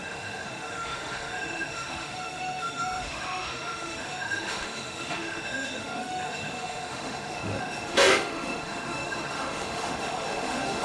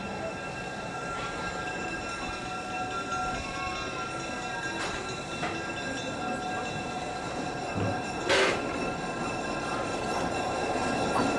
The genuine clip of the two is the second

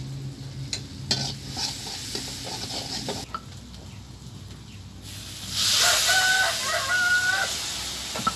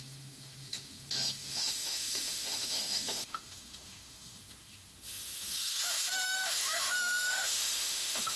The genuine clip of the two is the first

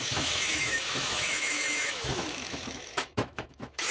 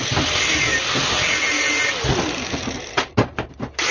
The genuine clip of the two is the second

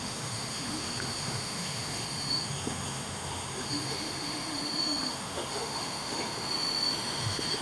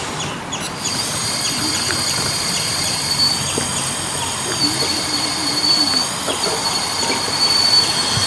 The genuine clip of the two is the second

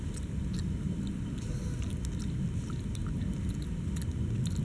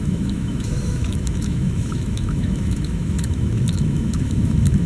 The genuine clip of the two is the first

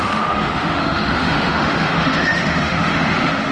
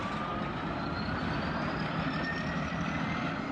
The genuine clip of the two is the second